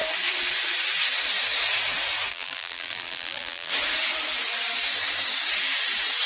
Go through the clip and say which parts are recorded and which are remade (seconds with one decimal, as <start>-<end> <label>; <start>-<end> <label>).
0.0-2.3 recorded; 2.3-3.7 remade; 3.7-6.3 recorded